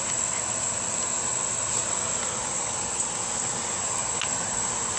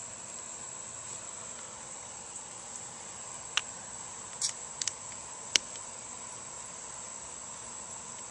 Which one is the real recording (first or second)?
first